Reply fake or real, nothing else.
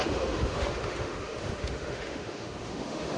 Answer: fake